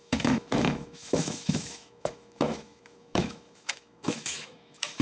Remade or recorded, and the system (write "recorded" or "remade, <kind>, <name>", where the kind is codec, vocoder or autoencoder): remade, autoencoder, DAC-VAE